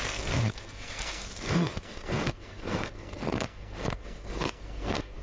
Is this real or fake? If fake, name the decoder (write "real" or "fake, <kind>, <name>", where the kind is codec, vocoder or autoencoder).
fake, codec, SNAC